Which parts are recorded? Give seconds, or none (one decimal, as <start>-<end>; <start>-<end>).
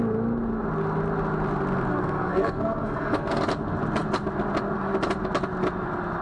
0.0-1.9; 3.4-6.2